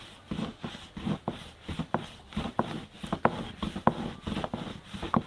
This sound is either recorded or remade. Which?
recorded